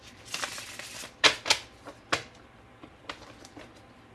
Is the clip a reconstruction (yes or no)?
yes